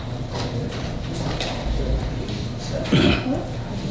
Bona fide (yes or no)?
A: yes